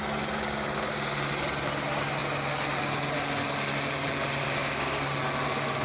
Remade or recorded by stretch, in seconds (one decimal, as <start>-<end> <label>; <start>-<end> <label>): 0.0-4.6 recorded; 4.6-5.2 remade; 5.2-5.8 recorded